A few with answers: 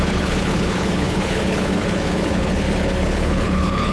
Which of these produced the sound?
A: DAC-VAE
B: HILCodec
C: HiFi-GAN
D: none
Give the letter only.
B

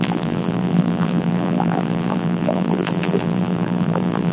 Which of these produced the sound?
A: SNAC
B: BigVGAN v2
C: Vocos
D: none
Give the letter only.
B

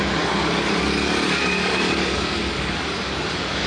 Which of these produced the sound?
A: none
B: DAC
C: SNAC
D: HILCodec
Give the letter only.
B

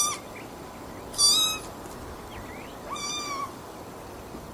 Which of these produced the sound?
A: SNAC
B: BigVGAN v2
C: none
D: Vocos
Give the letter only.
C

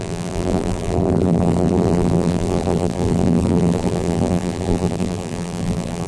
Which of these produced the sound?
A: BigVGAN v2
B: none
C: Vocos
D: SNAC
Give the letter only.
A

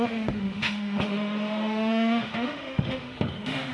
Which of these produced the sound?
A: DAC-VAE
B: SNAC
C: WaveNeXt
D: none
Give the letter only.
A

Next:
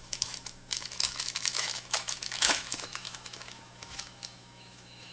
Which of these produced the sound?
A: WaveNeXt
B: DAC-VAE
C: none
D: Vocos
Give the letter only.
B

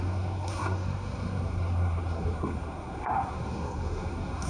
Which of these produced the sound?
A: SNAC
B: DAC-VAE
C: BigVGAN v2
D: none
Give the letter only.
A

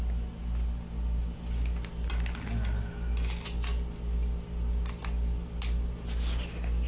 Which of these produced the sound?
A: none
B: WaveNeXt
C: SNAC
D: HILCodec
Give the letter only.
A